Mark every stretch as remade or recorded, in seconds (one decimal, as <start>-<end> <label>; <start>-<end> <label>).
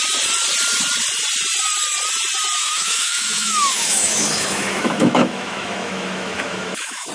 0.0-2.6 recorded; 2.6-7.1 remade